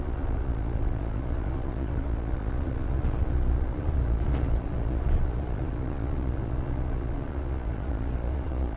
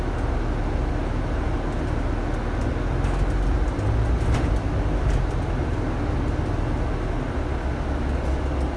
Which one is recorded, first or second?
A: second